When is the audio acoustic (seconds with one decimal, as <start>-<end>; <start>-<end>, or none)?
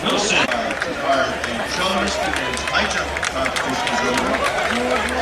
1.9-5.2